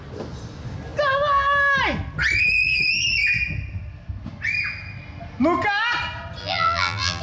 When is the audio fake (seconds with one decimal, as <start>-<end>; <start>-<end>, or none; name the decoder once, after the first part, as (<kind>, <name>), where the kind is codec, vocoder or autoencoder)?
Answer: 6.4-7.2 (vocoder, BigVGAN v2)